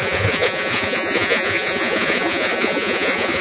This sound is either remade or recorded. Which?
remade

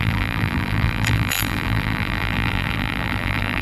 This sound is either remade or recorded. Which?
remade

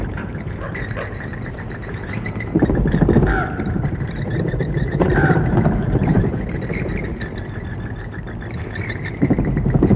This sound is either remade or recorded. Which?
remade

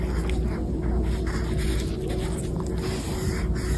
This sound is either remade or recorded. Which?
recorded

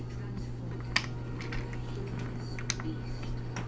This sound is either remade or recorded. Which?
recorded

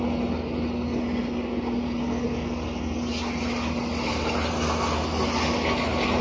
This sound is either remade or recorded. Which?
recorded